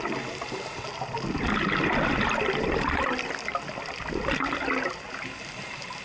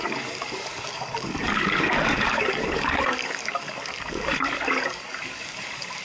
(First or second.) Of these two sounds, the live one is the first